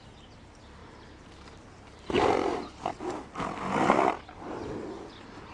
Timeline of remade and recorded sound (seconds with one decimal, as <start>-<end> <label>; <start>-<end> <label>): 0.0-0.8 recorded; 0.8-4.1 remade; 4.1-5.5 recorded